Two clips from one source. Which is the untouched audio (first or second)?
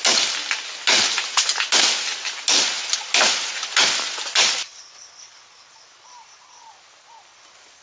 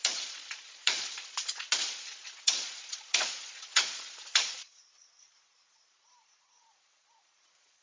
first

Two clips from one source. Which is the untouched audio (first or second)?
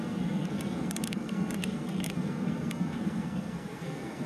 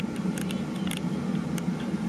second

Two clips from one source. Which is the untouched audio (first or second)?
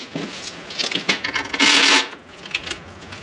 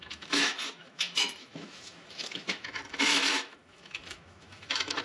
first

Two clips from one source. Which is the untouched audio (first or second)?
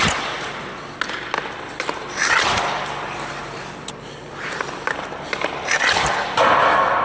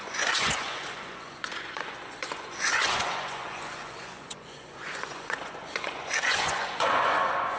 first